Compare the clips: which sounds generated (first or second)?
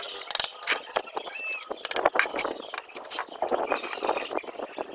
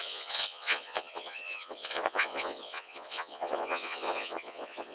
second